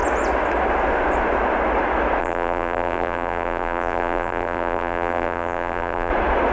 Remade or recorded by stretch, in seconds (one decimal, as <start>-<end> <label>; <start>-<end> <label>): 0.0-2.2 recorded; 2.2-6.1 remade; 6.1-6.5 recorded